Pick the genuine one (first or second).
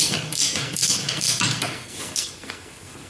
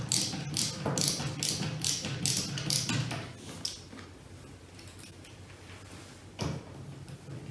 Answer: second